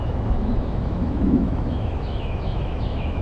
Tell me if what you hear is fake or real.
fake